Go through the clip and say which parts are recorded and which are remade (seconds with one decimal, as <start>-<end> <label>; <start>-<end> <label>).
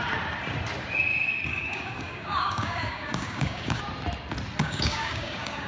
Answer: 0.0-1.1 recorded; 1.1-3.8 remade; 3.8-4.6 recorded; 4.6-5.7 remade